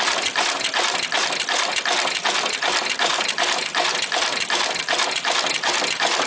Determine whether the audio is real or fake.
real